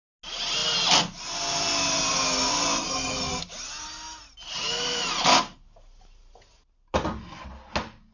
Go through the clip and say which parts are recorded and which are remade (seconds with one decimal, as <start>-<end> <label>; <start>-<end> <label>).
0.0-8.1 recorded